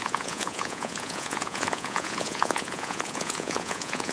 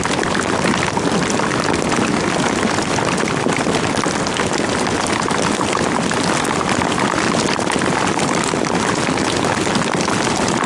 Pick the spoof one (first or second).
first